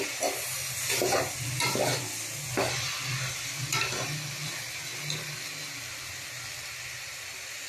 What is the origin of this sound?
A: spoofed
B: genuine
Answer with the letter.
B